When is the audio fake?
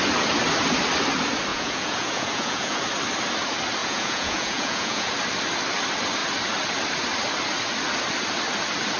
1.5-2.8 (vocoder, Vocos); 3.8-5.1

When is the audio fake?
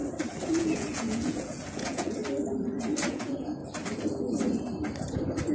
0.6-2.2 (vocoder, Vocos); 3.1-3.6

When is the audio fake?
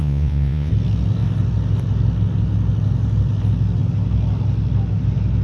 0.0-0.7 (vocoder, Vocos)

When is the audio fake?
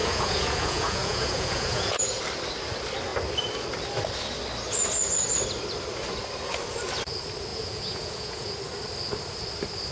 0.0-2.2 (vocoder, Vocos); 7.5-8.5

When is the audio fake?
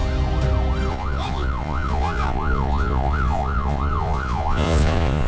0.9-5.3 (vocoder, Vocos)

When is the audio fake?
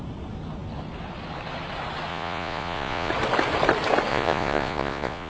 2.1-3.1 (vocoder, Vocos); 4.1-5.3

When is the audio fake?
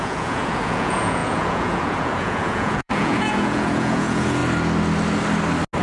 0.0-4.4 (vocoder, Vocos)